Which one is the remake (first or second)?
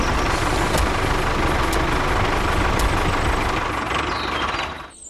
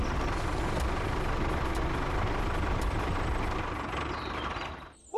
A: second